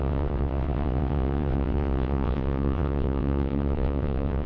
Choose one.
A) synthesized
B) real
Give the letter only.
A